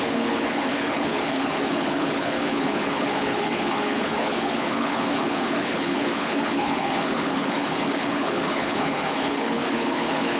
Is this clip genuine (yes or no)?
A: no